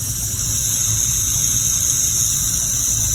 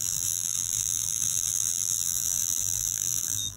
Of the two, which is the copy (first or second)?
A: second